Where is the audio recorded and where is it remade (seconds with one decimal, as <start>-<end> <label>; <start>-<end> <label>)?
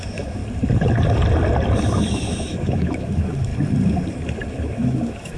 0.0-0.4 remade; 0.4-2.1 recorded; 2.1-3.5 remade; 3.5-4.5 recorded; 4.5-5.4 remade